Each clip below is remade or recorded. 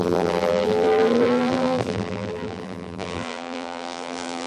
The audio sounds remade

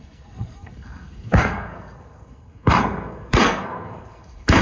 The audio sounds remade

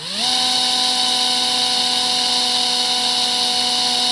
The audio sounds recorded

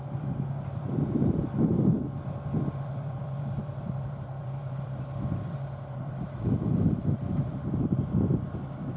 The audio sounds remade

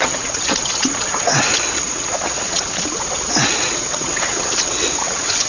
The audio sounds remade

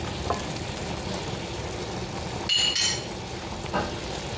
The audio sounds recorded